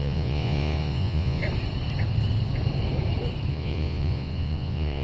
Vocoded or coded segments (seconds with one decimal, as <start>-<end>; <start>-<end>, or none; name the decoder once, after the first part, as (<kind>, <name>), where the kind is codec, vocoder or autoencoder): 0.0-1.4 (vocoder, Vocos); 3.5-5.0